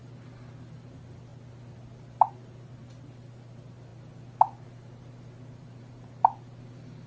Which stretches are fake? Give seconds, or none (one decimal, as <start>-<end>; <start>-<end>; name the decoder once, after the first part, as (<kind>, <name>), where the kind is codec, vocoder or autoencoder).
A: none